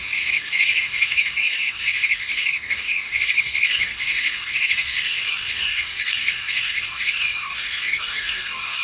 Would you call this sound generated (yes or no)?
yes